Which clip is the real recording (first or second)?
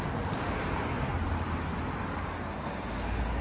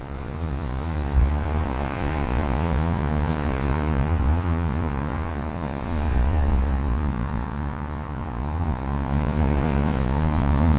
first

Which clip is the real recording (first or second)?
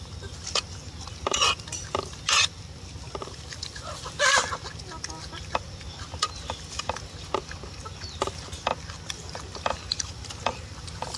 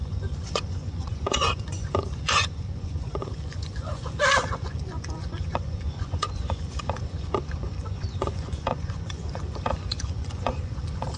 first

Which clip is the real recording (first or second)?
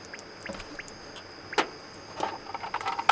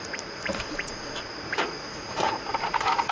first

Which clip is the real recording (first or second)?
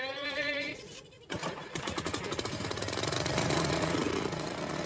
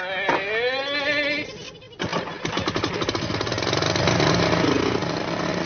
second